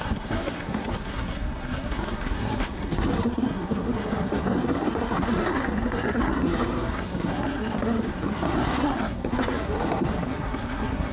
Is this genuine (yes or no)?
no